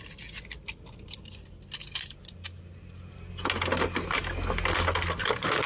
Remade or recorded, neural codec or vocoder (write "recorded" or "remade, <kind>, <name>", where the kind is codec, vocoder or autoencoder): recorded